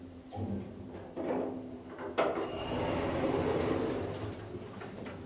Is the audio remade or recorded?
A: recorded